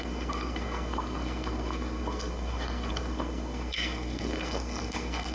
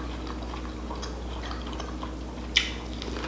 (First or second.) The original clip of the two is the second